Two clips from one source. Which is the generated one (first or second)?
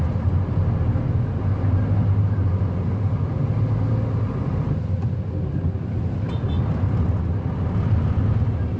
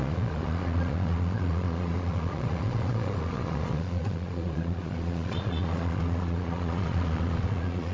second